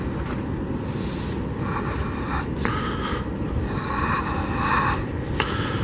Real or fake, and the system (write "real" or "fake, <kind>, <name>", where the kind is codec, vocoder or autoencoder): real